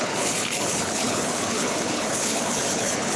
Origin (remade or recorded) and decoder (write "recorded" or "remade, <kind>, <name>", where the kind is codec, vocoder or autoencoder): remade, codec, HILCodec